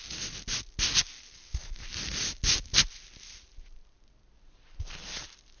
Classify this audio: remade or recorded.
recorded